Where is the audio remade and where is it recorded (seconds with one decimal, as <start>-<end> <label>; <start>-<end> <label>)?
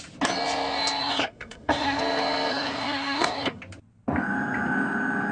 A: 0.0-1.0 recorded; 1.0-2.0 remade; 2.0-2.5 recorded; 2.5-3.6 remade; 3.6-5.3 recorded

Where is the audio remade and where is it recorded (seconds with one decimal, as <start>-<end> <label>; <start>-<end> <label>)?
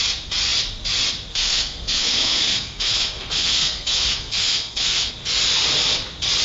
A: 0.0-1.3 recorded; 1.3-5.1 remade; 5.1-6.4 recorded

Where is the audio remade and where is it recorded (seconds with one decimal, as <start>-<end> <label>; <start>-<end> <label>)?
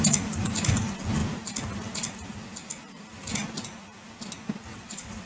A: 0.0-4.7 recorded; 4.7-5.3 remade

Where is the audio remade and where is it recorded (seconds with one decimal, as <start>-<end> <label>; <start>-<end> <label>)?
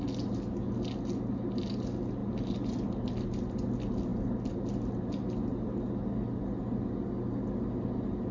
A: 0.0-8.3 recorded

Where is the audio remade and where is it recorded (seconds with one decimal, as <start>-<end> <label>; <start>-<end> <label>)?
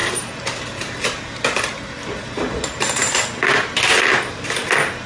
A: 0.0-3.1 remade; 3.1-5.1 recorded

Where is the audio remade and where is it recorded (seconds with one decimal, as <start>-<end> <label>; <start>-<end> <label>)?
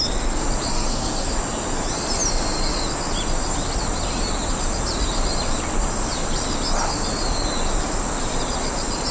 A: 0.0-0.7 recorded; 0.7-1.3 remade; 1.3-9.1 recorded